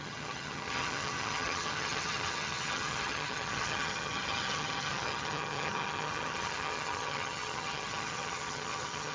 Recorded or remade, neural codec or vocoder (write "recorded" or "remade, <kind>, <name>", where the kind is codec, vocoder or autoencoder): remade, vocoder, HiFi-GAN